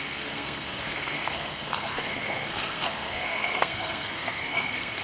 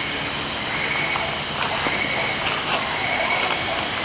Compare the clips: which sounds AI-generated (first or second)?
first